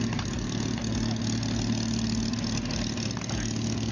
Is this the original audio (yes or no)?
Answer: yes